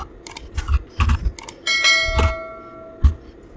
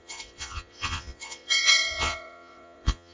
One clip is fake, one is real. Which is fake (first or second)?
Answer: second